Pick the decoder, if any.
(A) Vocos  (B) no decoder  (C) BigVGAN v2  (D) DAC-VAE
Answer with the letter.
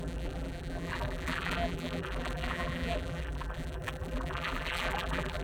C